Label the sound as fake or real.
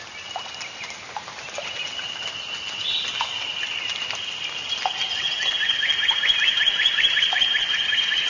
real